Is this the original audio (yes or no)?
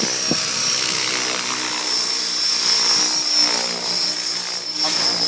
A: yes